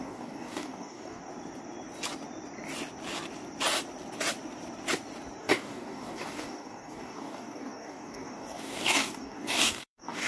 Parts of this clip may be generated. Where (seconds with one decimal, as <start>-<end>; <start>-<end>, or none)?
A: 0.0-1.2; 5.4-10.3